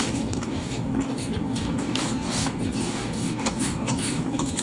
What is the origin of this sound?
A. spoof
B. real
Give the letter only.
A